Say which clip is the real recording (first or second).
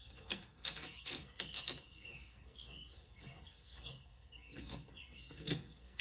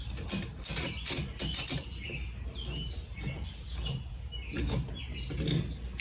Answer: second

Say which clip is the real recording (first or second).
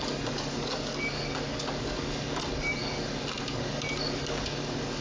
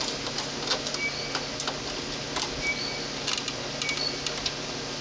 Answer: second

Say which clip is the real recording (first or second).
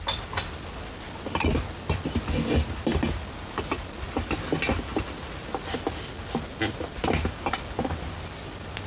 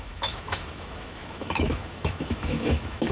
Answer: first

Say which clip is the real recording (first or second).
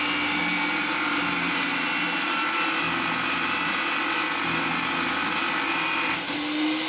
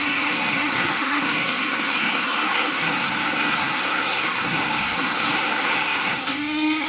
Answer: first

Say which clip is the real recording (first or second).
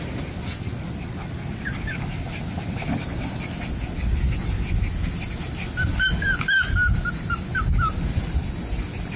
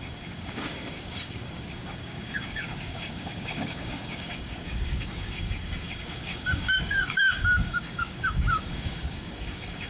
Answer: first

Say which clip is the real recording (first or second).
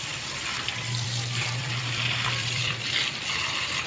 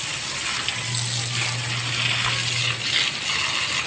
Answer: second